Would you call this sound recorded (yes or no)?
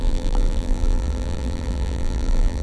no